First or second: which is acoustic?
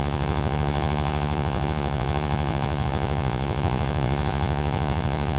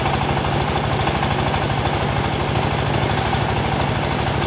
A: second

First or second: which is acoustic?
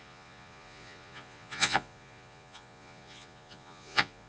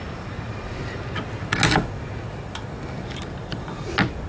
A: second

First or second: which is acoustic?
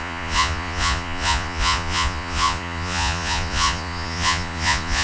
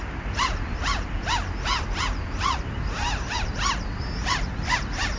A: second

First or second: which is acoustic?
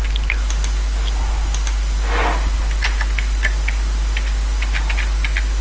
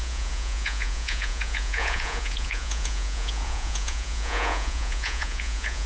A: first